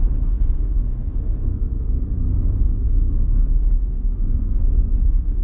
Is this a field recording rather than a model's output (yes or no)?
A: no